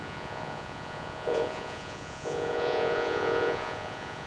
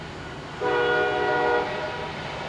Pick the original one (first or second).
second